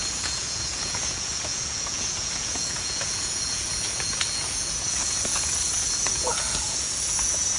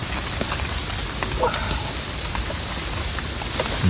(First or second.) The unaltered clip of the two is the second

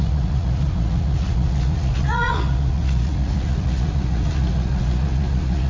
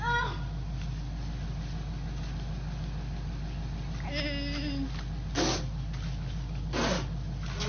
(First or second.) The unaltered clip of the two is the second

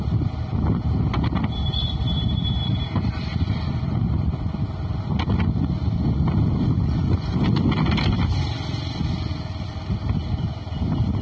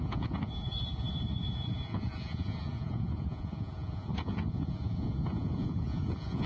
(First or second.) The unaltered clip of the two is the first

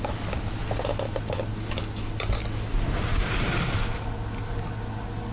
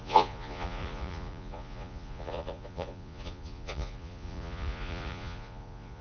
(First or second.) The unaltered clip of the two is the first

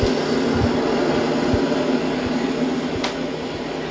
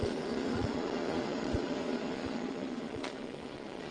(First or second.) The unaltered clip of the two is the first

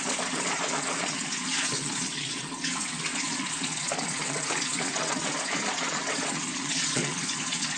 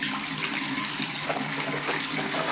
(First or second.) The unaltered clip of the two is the second